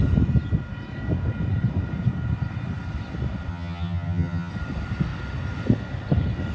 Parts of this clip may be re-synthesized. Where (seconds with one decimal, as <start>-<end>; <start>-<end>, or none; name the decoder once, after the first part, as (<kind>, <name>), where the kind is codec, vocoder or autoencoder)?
3.5-4.5 (vocoder, HiFi-GAN)